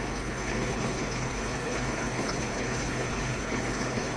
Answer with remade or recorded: remade